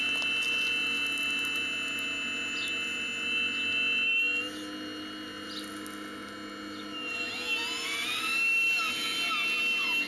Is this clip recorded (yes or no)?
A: yes